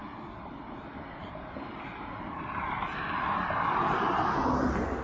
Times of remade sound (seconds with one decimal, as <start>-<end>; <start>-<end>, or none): none